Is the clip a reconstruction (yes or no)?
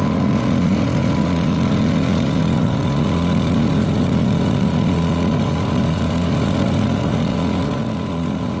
yes